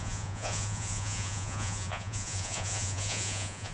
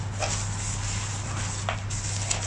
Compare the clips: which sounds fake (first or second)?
first